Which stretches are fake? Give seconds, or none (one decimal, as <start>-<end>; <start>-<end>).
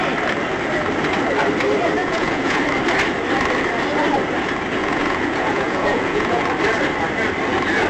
2.0-2.6; 4.8-6.4